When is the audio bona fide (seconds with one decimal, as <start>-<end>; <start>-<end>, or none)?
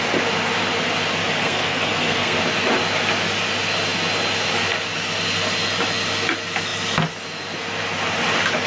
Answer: 0.0-1.4; 2.4-8.7